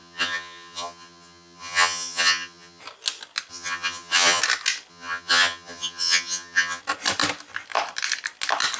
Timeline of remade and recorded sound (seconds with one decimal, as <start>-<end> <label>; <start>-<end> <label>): 0.0-2.8 remade; 2.8-3.5 recorded; 3.5-4.4 remade; 4.4-4.9 recorded; 4.9-6.8 remade; 6.8-8.8 recorded